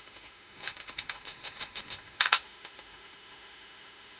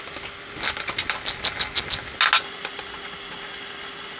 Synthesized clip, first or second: first